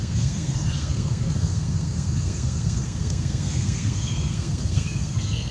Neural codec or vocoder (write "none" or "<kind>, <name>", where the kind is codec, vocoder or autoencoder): codec, SNAC